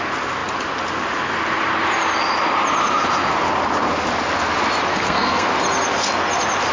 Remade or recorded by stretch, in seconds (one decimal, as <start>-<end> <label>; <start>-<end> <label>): 0.0-4.9 recorded; 4.9-5.5 remade; 5.5-6.7 recorded